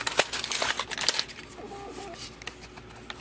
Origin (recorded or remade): recorded